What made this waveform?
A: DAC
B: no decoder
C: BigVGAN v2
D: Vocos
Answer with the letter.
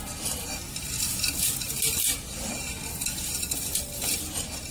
B